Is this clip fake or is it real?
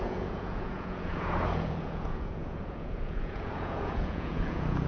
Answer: fake